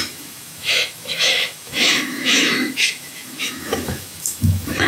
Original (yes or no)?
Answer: no